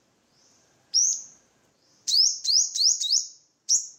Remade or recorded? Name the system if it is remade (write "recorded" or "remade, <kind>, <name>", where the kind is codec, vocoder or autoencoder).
remade, vocoder, BigVGAN v2